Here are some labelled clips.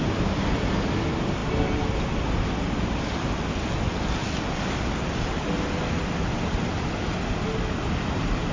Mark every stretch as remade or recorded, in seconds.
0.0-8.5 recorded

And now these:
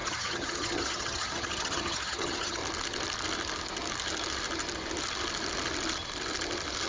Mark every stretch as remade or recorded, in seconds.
0.0-2.6 remade; 2.6-6.9 recorded

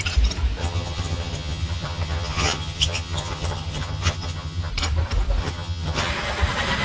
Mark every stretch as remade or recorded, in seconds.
0.0-0.6 recorded; 0.6-4.7 remade; 4.7-5.4 recorded; 5.4-6.1 remade; 6.1-6.8 recorded

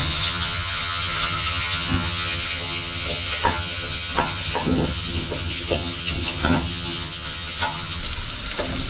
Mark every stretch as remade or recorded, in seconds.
0.0-8.0 remade; 8.0-8.9 recorded

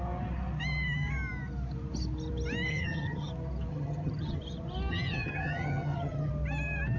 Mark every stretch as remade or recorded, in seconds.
0.0-2.7 recorded; 2.7-3.3 remade; 3.3-3.7 recorded; 3.7-4.4 remade; 4.4-4.9 recorded; 4.9-6.3 remade; 6.3-7.0 recorded

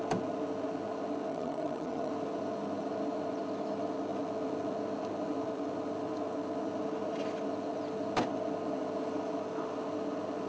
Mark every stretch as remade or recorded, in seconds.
0.0-1.3 recorded; 1.3-2.1 remade; 2.1-10.5 recorded